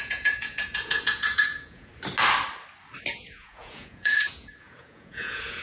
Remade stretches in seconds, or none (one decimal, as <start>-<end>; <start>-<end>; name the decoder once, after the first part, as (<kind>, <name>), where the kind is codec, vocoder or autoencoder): 0.0-1.9 (vocoder, Vocos); 3.1-5.6